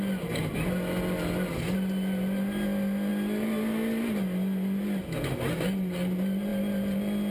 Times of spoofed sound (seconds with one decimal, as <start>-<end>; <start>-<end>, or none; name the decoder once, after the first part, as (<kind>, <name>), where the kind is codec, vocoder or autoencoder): none